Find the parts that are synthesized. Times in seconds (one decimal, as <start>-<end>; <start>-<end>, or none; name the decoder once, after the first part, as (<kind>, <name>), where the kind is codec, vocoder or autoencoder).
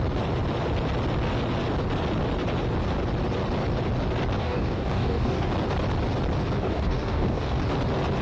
4.4-5.5 (codec, DAC); 6.6-7.6